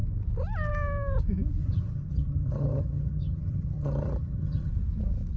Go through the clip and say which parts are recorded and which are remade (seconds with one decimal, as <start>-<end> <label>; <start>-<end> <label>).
0.0-1.6 recorded; 1.6-4.7 remade; 4.7-5.4 recorded